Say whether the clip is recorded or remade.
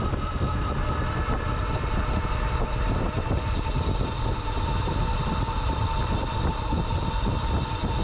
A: remade